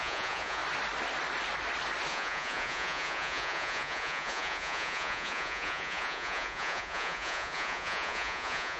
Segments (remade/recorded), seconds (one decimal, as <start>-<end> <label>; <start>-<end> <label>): 0.0-0.6 remade; 0.6-2.1 recorded; 2.1-8.8 remade